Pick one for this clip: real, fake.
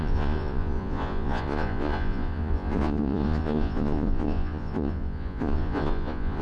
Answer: fake